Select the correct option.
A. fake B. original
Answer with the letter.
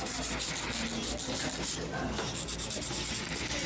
B